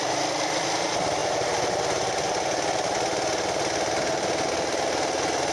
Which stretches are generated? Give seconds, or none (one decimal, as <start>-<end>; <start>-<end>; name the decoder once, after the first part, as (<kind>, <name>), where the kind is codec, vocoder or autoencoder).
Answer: none